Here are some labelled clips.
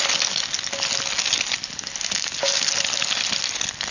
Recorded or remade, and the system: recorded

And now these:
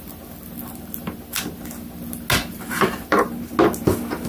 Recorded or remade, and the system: recorded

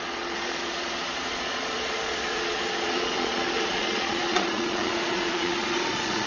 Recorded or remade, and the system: remade, vocoder, Vocos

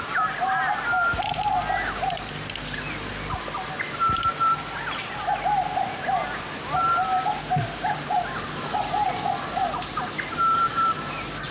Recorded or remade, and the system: recorded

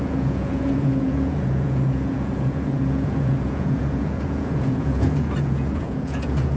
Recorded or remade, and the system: remade, vocoder, Vocos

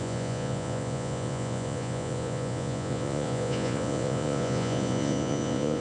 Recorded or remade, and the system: remade, vocoder, Vocos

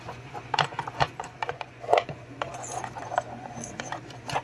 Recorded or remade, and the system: remade, vocoder, Vocos